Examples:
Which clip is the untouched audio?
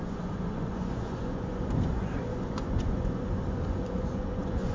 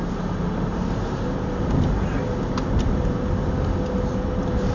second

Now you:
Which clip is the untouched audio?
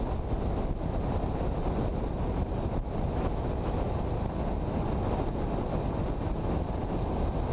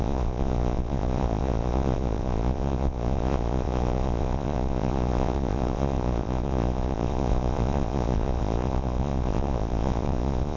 first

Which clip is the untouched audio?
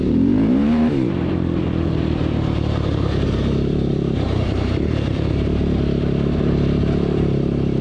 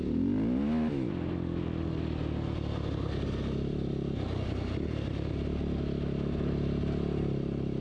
second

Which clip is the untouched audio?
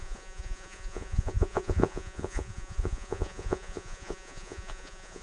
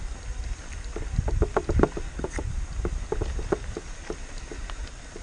second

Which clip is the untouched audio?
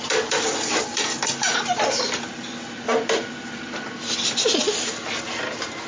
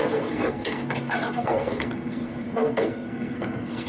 first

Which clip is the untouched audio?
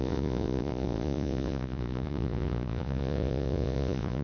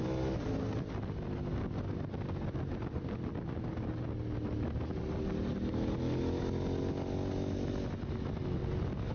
second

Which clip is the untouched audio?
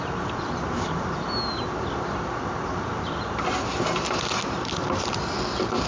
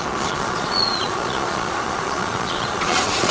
first